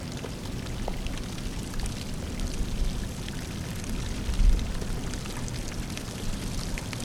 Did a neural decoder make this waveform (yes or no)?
no